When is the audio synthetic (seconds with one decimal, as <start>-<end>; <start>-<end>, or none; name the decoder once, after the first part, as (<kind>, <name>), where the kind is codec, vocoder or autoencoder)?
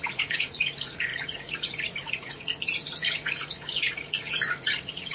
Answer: 0.0-5.1 (vocoder, Vocos)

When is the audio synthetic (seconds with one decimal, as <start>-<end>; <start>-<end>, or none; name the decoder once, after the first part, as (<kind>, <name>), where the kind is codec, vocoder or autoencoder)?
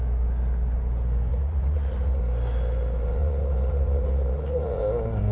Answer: 1.3-2.2 (vocoder, Vocos); 3.2-4.8